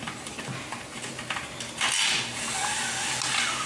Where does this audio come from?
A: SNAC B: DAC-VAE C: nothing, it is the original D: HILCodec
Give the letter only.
C